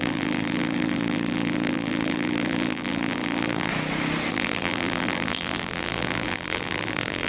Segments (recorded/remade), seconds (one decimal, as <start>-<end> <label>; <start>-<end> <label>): 0.0-3.7 remade; 3.7-4.3 recorded; 4.3-7.3 remade